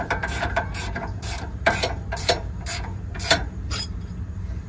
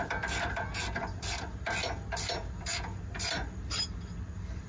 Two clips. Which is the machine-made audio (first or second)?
first